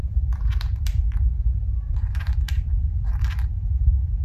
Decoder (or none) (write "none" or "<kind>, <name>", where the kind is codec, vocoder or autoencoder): vocoder, BigVGAN v2